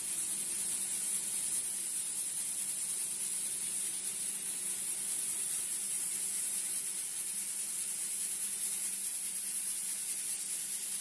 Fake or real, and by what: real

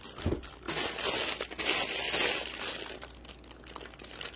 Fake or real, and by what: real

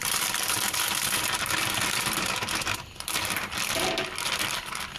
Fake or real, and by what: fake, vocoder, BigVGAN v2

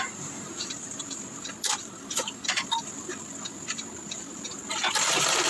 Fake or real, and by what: fake, vocoder, BigVGAN v2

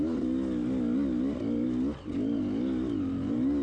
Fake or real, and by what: real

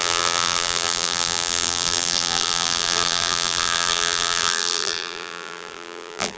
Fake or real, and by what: fake, vocoder, BigVGAN v2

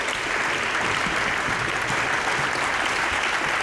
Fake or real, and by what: real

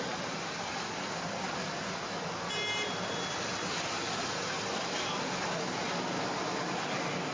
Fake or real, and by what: real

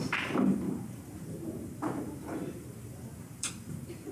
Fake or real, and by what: fake, vocoder, BigVGAN v2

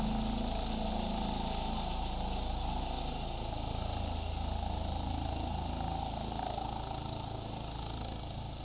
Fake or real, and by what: real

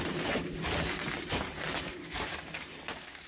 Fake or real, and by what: fake, vocoder, BigVGAN v2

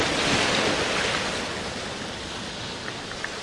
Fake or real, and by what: real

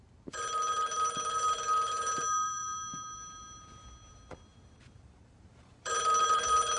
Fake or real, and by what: fake, vocoder, BigVGAN v2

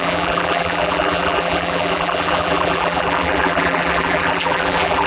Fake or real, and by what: fake, vocoder, BigVGAN v2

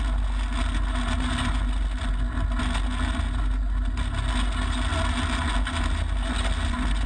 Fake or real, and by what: real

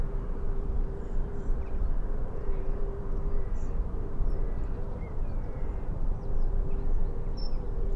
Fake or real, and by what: fake, vocoder, BigVGAN v2